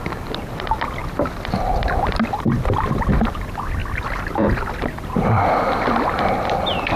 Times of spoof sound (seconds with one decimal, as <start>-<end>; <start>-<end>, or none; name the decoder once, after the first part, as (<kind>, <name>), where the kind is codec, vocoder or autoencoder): 3.8-5.6 (vocoder, BigVGAN v2)